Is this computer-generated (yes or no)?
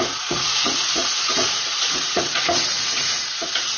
yes